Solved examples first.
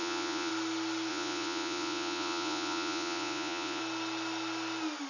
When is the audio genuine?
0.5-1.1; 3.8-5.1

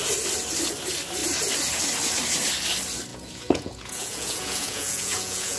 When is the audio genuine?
0.0-3.1

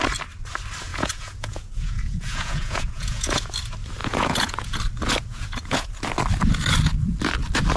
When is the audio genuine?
0.0-0.9; 3.5-4.0; 4.8-5.3; 5.9-7.8

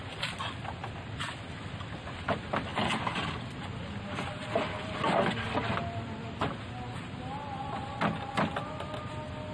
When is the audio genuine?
0.0-9.5

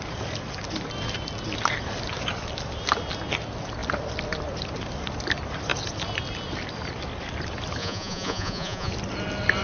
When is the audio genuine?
0.0-7.8; 8.9-9.6

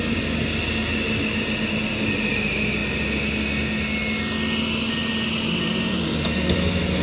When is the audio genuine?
0.0-7.0

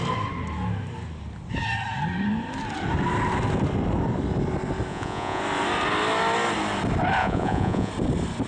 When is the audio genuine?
0.0-4.9; 5.4-7.2; 7.9-8.5